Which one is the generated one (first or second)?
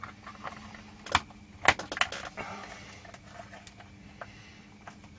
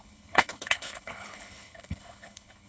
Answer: second